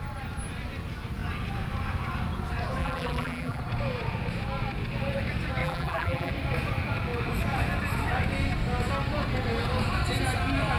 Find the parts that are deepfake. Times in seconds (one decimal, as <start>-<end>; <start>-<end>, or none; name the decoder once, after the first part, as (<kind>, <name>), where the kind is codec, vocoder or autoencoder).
2.8-3.6 (vocoder, BigVGAN v2); 5.6-6.3